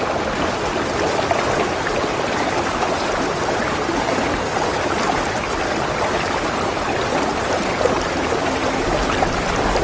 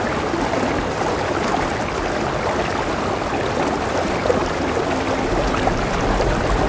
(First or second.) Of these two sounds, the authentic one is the second